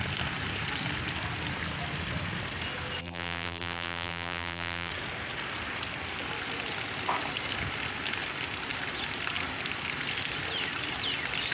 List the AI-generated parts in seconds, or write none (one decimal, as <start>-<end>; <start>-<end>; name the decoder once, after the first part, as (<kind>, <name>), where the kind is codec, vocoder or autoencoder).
3.0-4.9 (vocoder, BigVGAN v2)